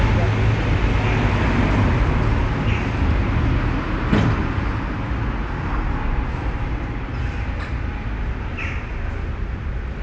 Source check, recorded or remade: recorded